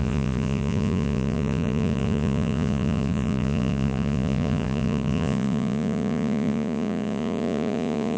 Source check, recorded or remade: remade